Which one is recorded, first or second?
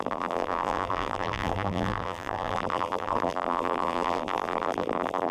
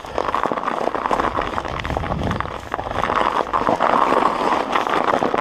second